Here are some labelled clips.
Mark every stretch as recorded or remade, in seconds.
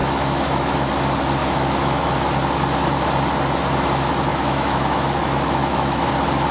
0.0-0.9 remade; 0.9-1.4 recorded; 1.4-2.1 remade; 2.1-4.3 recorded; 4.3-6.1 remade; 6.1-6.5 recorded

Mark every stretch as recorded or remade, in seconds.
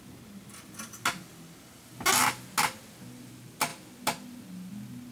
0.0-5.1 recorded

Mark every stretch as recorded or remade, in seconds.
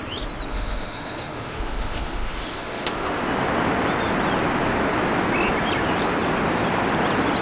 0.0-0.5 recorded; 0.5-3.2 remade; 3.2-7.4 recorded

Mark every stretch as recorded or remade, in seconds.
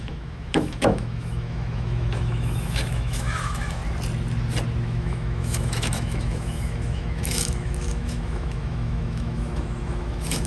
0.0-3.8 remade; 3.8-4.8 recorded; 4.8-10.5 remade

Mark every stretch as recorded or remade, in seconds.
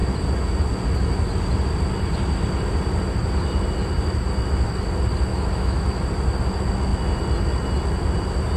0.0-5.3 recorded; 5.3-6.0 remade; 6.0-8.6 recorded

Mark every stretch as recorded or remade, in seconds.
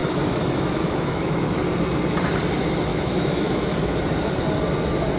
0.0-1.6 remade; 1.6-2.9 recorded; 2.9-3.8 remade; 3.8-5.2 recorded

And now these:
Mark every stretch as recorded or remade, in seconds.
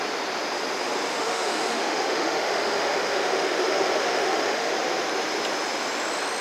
0.0-1.1 recorded; 1.1-4.7 remade; 4.7-6.4 recorded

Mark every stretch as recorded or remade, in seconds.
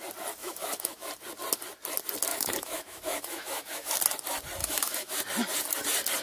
0.0-0.4 recorded; 0.4-1.1 remade; 1.1-2.3 recorded; 2.3-3.9 remade; 3.9-4.6 recorded; 4.6-5.2 remade; 5.2-6.2 recorded